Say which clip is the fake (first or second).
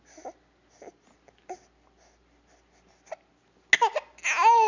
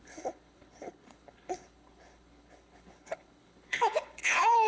second